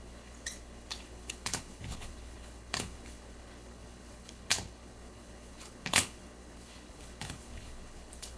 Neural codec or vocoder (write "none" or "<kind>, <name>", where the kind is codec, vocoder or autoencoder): codec, HILCodec